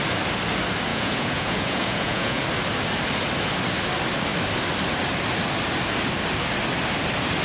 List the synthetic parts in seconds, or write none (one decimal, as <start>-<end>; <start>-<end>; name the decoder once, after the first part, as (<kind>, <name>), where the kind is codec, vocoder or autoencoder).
0.9-2.4 (vocoder, Vocos)